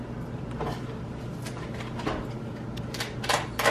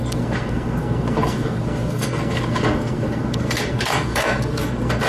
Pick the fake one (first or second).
second